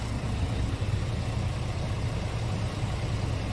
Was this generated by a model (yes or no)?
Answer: yes